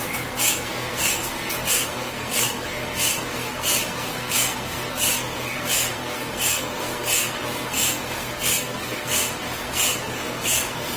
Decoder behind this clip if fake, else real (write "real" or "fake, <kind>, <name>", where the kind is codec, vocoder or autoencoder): fake, codec, SNAC